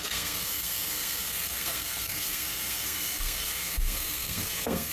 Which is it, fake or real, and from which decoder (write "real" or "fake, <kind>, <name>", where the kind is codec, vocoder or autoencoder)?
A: fake, codec, SNAC